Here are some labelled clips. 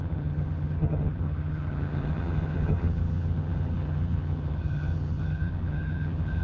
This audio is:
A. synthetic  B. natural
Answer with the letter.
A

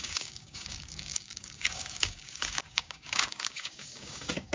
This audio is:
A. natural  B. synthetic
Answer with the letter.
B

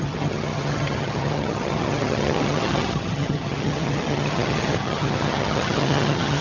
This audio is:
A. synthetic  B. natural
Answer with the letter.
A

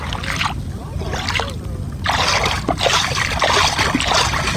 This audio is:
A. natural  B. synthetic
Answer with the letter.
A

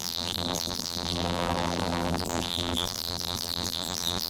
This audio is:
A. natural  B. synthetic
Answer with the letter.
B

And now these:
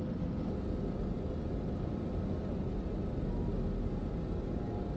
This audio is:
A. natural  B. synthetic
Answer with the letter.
A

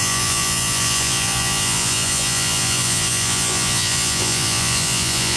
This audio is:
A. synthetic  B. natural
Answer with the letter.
A